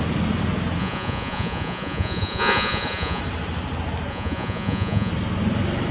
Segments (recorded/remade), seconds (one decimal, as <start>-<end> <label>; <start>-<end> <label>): 0.0-0.8 recorded; 0.8-3.2 remade; 3.2-4.1 recorded; 4.1-5.1 remade; 5.1-5.9 recorded